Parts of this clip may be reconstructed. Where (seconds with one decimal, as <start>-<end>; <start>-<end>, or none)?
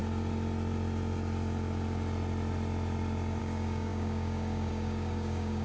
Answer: 3.4-5.6